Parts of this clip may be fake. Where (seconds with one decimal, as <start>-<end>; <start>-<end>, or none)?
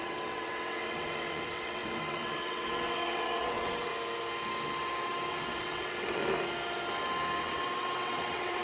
0.0-3.9; 5.3-6.2; 7.4-8.6